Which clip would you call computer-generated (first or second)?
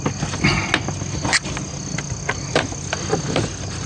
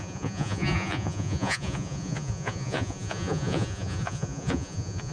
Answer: second